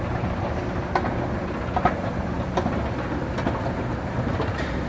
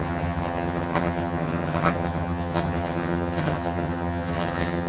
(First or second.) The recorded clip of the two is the first